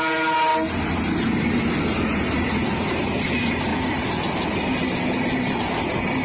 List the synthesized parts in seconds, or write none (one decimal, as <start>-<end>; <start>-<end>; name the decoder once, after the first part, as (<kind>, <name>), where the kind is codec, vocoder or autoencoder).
none